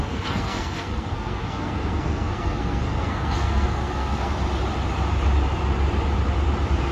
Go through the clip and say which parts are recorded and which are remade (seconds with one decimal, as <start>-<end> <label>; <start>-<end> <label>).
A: 0.0-4.3 remade; 4.3-6.9 recorded